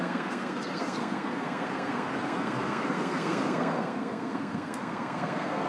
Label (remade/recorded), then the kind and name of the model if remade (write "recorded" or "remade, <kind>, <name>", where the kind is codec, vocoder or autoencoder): remade, codec, SNAC